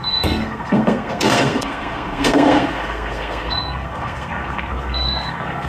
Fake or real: fake